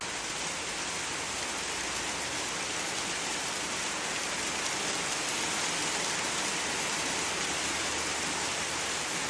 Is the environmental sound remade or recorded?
recorded